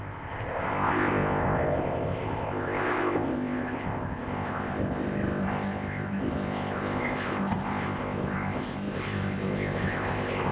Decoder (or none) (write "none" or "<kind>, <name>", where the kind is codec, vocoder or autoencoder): codec, ZipCodec